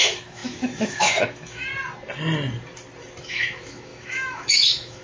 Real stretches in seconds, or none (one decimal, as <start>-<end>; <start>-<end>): 1.7-3.2